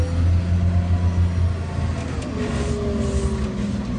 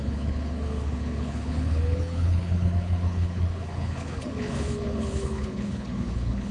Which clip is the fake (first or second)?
second